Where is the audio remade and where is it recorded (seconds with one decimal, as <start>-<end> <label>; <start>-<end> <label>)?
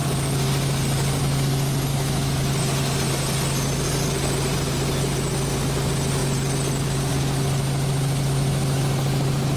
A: 0.0-1.9 recorded; 1.9-2.4 remade; 2.4-9.6 recorded